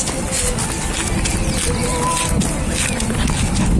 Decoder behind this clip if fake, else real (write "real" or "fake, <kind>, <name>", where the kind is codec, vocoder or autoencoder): real